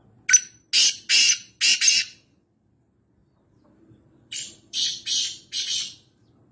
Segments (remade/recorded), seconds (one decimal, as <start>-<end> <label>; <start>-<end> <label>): 0.0-1.7 recorded; 1.7-2.7 remade; 2.7-3.2 recorded; 3.2-6.5 remade